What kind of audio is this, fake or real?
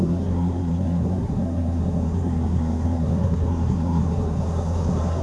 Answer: fake